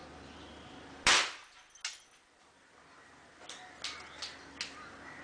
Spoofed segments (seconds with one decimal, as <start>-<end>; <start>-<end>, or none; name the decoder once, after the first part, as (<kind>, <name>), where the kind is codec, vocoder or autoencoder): none

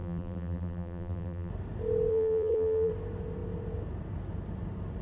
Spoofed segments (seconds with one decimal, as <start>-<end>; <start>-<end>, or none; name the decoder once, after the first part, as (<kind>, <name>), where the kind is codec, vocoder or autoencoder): 0.0-1.5 (vocoder, BigVGAN v2); 2.1-2.9

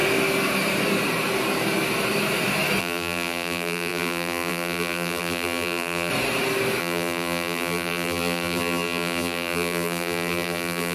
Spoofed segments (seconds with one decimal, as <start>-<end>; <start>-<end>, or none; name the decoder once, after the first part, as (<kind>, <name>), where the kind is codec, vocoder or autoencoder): 2.8-6.1 (vocoder, BigVGAN v2); 6.8-10.9